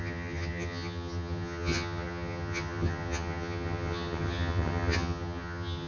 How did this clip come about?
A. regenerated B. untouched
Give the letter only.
A